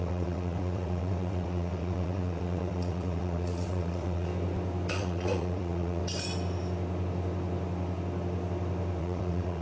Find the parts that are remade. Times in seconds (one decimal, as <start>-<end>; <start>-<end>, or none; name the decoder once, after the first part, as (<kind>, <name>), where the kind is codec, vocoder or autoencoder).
0.0-4.3 (vocoder, WaveNeXt); 4.9-6.0; 9.0-9.6